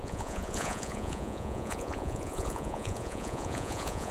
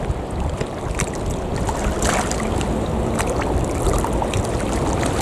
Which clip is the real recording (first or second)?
second